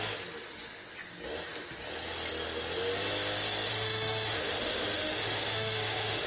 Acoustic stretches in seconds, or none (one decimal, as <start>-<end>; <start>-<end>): 0.0-3.7